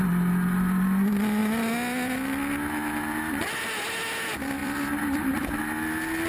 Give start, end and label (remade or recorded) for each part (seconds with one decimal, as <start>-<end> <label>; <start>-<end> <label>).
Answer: 0.0-4.6 recorded; 4.6-5.6 remade; 5.6-6.3 recorded